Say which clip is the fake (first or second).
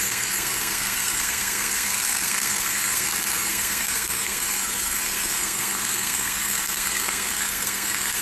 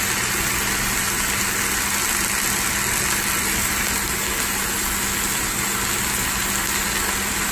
first